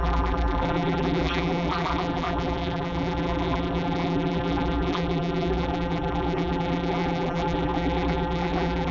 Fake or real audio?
fake